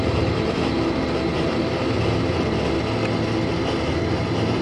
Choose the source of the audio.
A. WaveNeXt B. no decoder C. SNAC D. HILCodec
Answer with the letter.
B